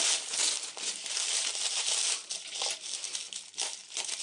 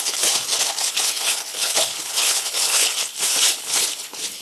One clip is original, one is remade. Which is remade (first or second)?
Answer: second